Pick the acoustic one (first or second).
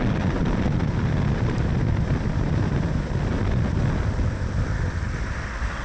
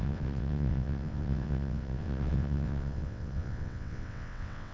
first